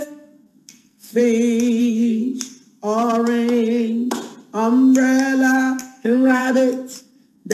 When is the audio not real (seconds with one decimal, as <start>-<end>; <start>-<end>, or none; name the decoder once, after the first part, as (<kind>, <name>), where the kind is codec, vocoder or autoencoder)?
0.0-1.2 (codec, SNAC); 1.8-2.2; 5.8-6.4; 7.0-7.5